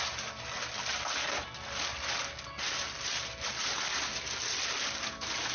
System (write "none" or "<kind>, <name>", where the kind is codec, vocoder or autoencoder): none